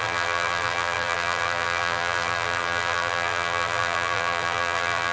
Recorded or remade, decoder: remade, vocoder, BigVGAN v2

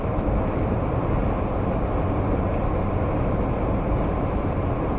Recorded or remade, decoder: recorded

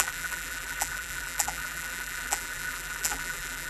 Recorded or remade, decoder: remade, vocoder, BigVGAN v2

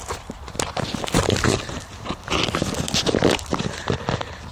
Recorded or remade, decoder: remade, vocoder, BigVGAN v2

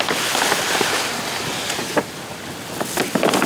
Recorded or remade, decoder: recorded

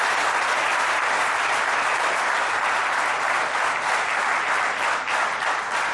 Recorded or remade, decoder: recorded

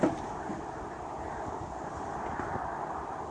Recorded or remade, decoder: recorded